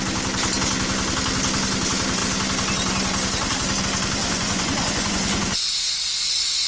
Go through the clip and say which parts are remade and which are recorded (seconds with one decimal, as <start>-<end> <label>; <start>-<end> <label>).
0.0-4.2 recorded; 4.2-6.3 remade; 6.3-6.7 recorded